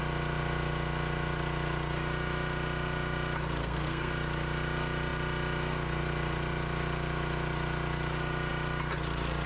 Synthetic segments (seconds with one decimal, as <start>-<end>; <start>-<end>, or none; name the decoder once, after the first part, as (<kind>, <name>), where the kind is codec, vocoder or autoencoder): 3.6-4.1 (codec, SNAC)